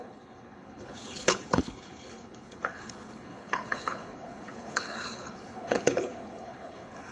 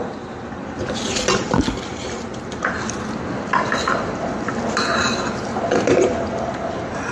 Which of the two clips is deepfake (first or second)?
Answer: first